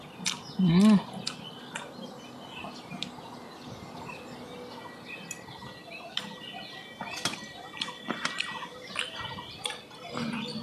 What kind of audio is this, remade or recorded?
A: recorded